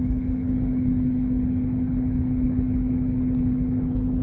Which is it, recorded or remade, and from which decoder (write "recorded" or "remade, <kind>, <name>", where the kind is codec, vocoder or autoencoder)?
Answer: remade, codec, HILCodec